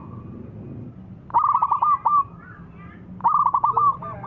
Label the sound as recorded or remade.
recorded